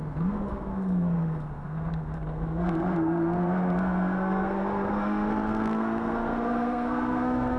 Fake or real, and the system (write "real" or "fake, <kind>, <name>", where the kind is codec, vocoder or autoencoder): fake, codec, SNAC